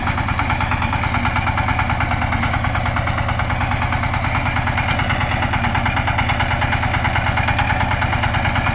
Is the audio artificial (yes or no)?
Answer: no